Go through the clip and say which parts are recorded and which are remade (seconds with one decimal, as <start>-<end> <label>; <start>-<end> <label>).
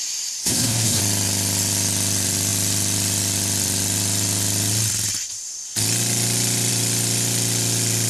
0.0-0.4 recorded; 0.4-1.0 remade; 1.0-8.1 recorded